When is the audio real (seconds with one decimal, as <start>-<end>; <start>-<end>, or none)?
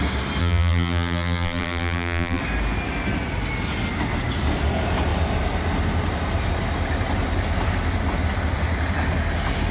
0.0-0.4; 2.4-9.7